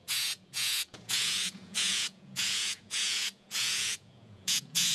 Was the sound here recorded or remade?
remade